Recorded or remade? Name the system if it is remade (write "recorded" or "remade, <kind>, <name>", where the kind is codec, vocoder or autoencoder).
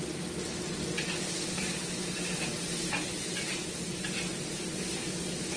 recorded